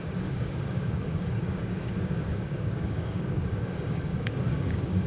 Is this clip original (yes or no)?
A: no